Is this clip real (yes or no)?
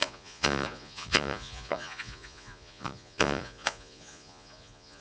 no